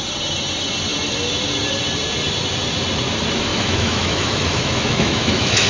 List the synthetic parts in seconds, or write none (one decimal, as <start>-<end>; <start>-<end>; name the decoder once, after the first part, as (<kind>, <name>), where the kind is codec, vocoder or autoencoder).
3.5-5.7 (autoencoder, DAC-VAE)